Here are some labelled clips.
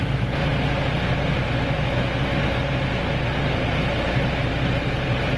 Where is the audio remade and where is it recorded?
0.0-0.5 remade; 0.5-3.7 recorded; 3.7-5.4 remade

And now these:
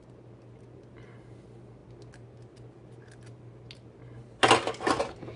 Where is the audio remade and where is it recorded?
0.0-5.4 recorded

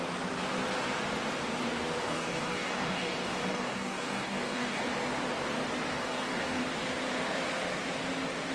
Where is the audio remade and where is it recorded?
0.0-2.0 recorded; 2.0-4.8 remade; 4.8-5.9 recorded; 5.9-6.6 remade; 6.6-8.5 recorded

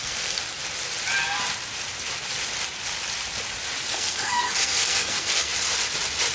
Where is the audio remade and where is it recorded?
0.0-0.4 remade; 0.4-3.9 recorded; 3.9-5.5 remade; 5.5-6.3 recorded

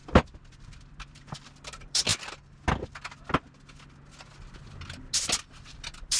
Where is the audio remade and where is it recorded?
0.0-0.5 recorded; 0.5-2.1 remade; 2.1-5.5 recorded; 5.5-6.2 remade

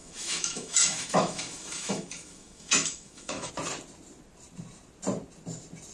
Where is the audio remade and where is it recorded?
0.0-3.5 remade; 3.5-5.9 recorded

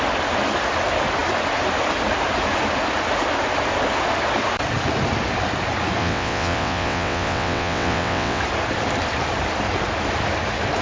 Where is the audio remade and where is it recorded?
0.0-6.0 recorded; 6.0-8.4 remade; 8.4-10.8 recorded

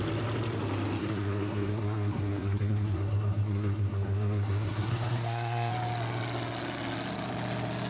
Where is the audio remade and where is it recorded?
0.0-1.0 recorded; 1.0-5.7 remade; 5.7-7.9 recorded